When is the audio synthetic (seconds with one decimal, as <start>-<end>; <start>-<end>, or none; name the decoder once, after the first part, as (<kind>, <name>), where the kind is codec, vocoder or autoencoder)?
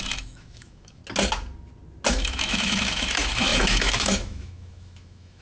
0.0-1.0 (autoencoder, DAC-VAE); 2.1-5.4